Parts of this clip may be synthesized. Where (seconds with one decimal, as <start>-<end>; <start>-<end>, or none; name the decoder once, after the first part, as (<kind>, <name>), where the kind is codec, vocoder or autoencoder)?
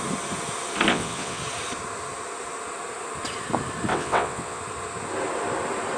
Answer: 0.9-1.4 (vocoder, WaveNeXt); 3.9-4.6